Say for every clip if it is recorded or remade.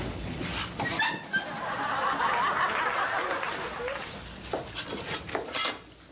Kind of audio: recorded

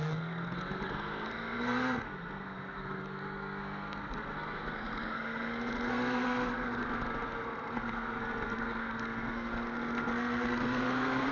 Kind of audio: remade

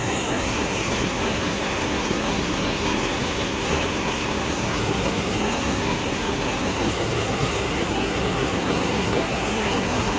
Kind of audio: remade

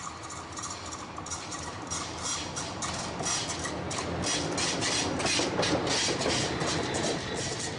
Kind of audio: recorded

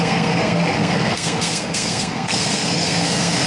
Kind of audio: remade